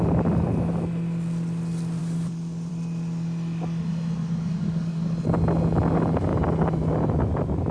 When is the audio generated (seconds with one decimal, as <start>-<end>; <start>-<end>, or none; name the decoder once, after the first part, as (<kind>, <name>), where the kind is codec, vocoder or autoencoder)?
2.0-2.7 (codec, DAC); 4.2-5.1